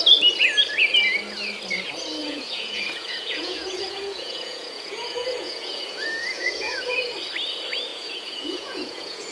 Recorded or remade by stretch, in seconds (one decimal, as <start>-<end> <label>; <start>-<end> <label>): 0.0-2.2 recorded; 2.2-7.0 remade; 7.0-7.9 recorded; 7.9-9.3 remade